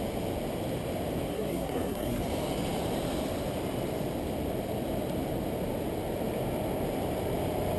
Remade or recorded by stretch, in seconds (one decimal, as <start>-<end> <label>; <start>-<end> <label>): 0.0-1.3 recorded; 1.3-2.2 remade; 2.2-7.8 recorded